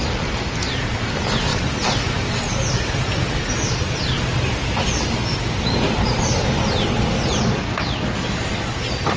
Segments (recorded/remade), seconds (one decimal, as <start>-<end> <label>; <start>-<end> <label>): 0.0-1.5 recorded; 1.5-4.4 remade; 4.4-9.2 recorded